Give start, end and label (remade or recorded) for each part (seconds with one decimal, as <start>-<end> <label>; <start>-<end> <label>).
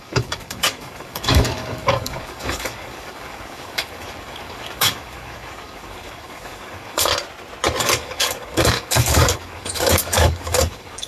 0.0-7.1 remade; 7.1-7.8 recorded; 7.8-11.1 remade